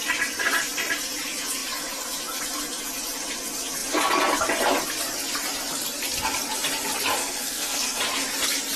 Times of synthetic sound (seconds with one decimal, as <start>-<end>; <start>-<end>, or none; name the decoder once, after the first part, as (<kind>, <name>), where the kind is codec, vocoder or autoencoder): 7.2-8.0 (codec, SNAC)